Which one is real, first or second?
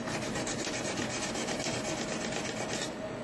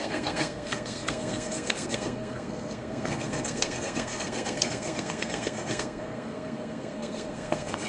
first